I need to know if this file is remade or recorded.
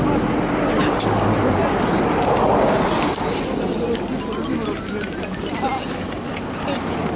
recorded